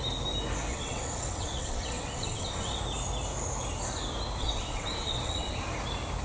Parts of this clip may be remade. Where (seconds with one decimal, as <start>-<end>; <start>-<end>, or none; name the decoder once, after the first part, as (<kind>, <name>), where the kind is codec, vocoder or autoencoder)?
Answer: 0.7-2.8 (vocoder, WaveNeXt); 4.4-5.5